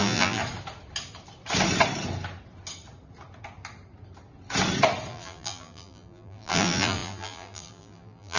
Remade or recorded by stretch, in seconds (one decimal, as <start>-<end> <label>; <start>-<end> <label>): 0.0-0.4 remade; 0.4-5.1 recorded; 5.1-8.4 remade